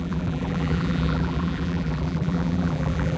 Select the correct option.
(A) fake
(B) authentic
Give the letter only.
A